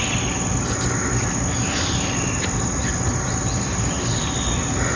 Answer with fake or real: real